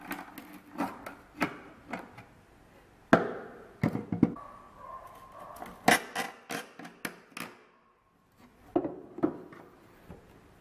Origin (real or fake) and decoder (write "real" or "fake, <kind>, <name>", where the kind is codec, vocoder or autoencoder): real